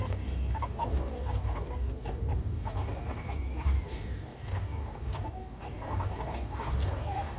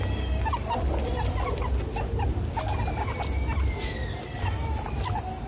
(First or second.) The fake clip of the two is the first